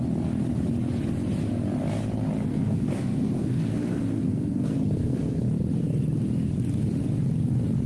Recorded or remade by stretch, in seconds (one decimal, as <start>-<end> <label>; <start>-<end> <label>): 0.0-2.5 recorded; 2.5-5.4 remade; 5.4-7.9 recorded